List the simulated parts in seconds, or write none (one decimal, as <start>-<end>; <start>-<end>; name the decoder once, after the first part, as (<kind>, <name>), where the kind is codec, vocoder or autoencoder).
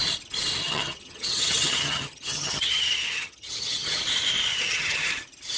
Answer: 0.6-4.0 (vocoder, HiFi-GAN); 4.5-5.1